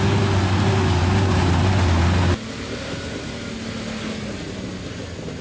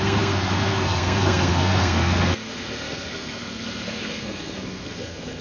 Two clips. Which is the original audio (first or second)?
first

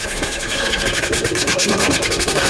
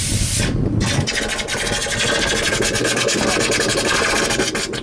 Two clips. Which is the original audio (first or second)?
second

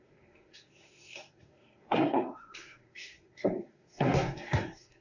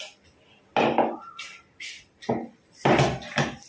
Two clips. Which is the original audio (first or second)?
second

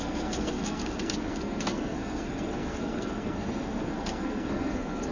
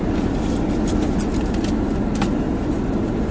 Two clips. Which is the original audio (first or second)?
second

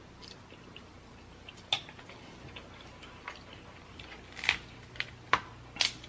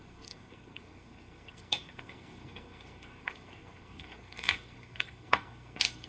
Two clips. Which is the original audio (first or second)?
first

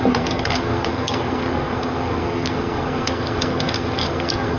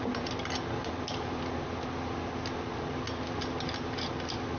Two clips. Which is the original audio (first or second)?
second